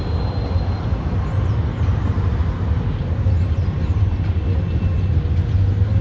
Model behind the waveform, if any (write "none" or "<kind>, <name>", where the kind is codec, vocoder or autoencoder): none